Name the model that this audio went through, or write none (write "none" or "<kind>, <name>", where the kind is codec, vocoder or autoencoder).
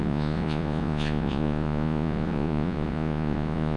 vocoder, Vocos